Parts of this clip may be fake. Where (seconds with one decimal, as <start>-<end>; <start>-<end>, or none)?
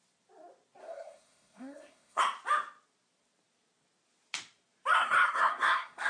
0.8-2.2; 5.0-6.1